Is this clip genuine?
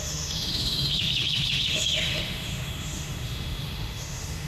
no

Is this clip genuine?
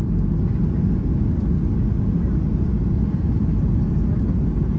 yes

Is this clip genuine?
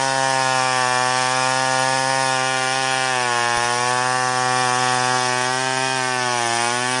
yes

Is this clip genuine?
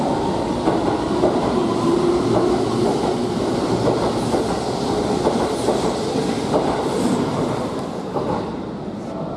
yes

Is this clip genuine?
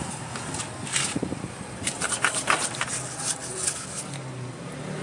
yes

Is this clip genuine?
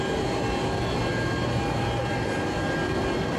yes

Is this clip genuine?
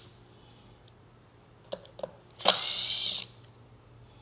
yes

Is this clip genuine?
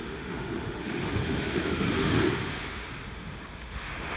no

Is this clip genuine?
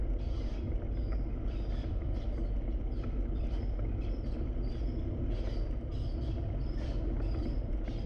yes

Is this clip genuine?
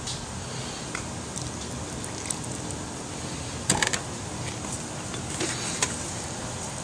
yes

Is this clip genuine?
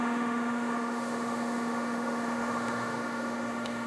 no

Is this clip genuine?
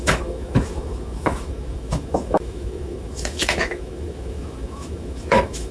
no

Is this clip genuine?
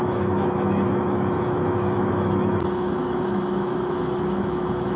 no